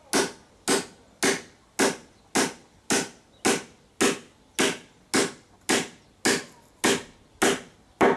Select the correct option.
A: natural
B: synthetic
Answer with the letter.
A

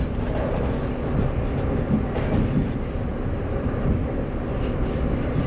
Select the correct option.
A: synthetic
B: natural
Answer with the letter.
B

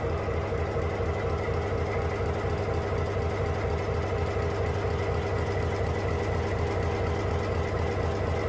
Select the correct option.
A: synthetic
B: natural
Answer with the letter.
B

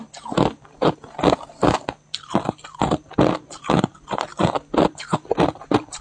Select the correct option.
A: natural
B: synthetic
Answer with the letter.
A